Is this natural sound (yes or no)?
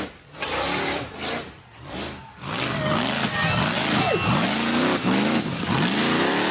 yes